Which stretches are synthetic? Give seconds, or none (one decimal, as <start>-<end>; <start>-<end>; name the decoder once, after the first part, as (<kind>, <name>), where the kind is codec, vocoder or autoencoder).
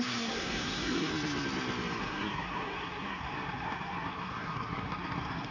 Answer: 0.0-1.1 (codec, SNAC); 2.0-5.5